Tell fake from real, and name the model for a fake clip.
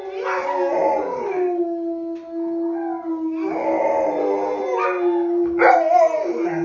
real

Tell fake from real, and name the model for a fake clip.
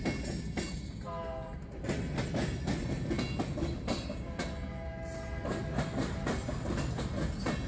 real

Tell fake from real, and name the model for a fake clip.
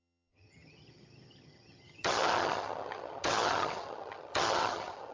fake, vocoder, HiFi-GAN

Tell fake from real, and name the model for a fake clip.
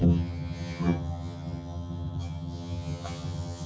fake, vocoder, HiFi-GAN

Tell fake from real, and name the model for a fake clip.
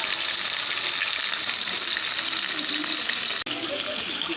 real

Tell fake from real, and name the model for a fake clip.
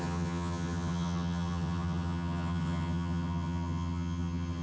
fake, vocoder, HiFi-GAN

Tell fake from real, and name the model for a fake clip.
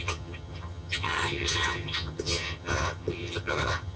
fake, vocoder, HiFi-GAN